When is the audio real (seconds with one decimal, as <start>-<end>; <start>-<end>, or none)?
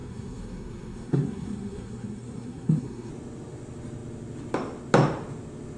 3.1-5.8